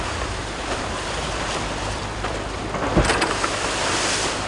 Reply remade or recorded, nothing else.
remade